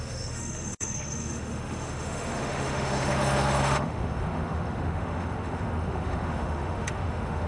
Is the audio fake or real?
fake